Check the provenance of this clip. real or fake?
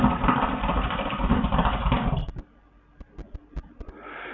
real